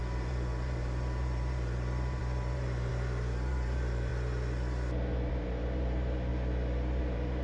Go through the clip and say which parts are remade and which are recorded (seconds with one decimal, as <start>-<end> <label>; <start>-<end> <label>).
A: 0.0-4.1 remade; 4.1-5.3 recorded; 5.3-6.3 remade; 6.3-7.0 recorded; 7.0-7.4 remade